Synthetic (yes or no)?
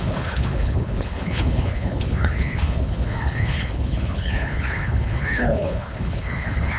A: yes